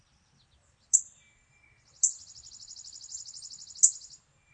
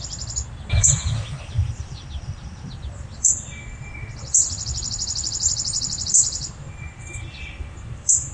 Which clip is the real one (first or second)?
first